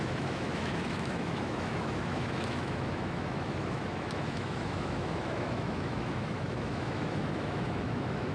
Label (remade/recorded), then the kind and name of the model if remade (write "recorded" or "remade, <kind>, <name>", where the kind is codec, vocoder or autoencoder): remade, autoencoder, DAC-VAE